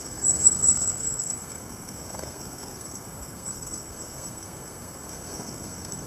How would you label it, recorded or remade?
remade